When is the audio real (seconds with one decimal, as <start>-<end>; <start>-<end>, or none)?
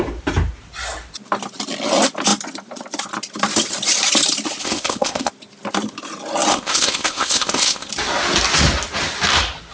0.0-4.6; 5.3-6.5; 7.9-9.7